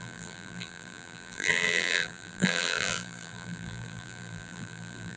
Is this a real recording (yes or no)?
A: no